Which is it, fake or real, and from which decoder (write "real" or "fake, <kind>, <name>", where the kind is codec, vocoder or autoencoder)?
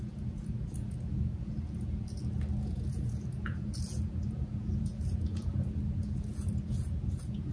fake, vocoder, Vocos